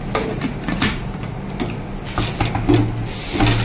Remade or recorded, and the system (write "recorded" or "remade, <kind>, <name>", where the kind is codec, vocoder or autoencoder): recorded